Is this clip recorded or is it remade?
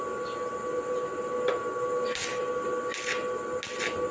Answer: recorded